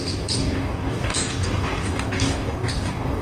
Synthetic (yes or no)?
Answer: yes